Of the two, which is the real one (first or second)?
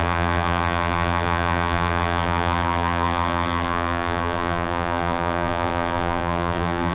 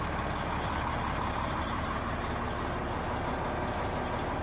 second